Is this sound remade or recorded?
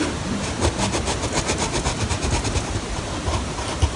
recorded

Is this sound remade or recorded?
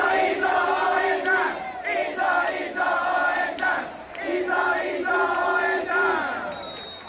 remade